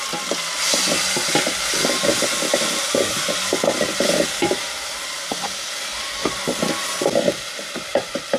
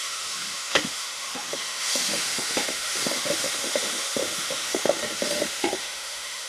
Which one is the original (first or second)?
first